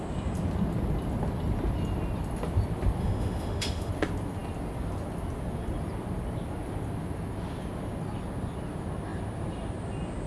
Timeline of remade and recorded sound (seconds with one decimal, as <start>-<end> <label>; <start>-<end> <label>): 0.0-3.0 recorded; 3.0-3.9 remade; 3.9-10.3 recorded